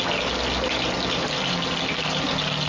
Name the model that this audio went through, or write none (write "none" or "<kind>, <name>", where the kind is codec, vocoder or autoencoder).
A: none